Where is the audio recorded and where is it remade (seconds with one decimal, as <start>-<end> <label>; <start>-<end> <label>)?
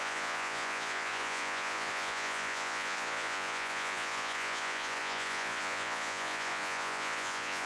0.0-7.7 remade